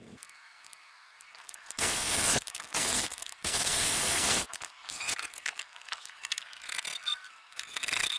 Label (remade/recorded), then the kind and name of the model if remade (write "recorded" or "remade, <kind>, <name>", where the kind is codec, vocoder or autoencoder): remade, codec, SNAC